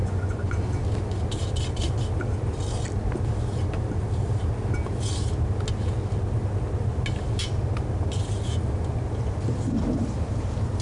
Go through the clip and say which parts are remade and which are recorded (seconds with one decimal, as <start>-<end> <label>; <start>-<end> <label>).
0.0-0.5 remade; 0.5-10.8 recorded